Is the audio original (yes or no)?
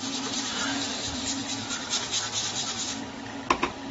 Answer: yes